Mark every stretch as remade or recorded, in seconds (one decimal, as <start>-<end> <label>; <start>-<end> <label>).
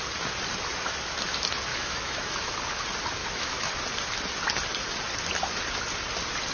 0.0-1.7 recorded; 1.7-2.6 remade; 2.6-3.2 recorded; 3.2-3.7 remade; 3.7-6.5 recorded